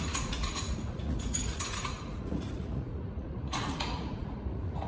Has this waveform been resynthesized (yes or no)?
yes